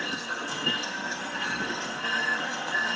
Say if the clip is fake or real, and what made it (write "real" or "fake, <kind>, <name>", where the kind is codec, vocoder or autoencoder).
fake, codec, SNAC